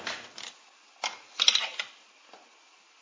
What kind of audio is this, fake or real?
real